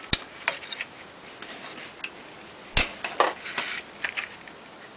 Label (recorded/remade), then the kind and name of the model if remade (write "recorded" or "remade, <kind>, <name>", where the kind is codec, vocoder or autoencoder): recorded